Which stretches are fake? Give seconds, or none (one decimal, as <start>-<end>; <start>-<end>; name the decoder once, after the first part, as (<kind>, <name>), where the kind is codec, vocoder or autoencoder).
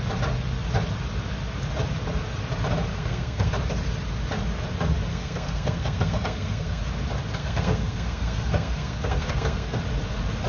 2.9-3.5 (codec, SNAC); 5.1-6.8; 7.4-9.8